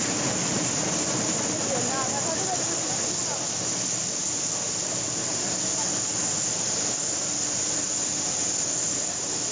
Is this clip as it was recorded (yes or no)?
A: yes